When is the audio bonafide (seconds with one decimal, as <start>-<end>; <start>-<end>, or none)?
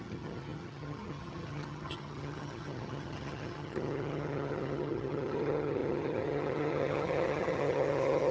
none